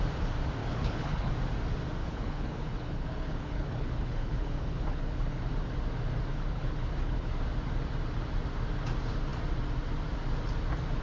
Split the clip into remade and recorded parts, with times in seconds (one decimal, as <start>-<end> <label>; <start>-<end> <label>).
0.0-0.6 recorded; 0.6-1.3 remade; 1.3-2.0 recorded; 2.0-5.4 remade; 5.4-6.3 recorded; 6.3-7.3 remade; 7.3-11.0 recorded